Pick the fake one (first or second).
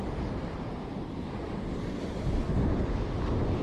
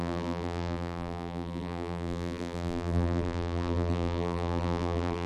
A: second